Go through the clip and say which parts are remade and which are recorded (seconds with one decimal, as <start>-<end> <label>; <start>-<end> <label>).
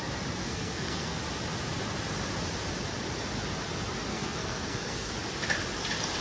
0.0-0.4 recorded; 0.4-1.2 remade; 1.2-4.1 recorded; 4.1-5.1 remade; 5.1-6.2 recorded